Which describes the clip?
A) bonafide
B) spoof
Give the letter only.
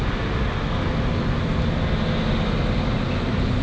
A